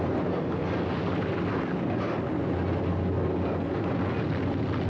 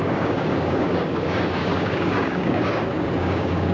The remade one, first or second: second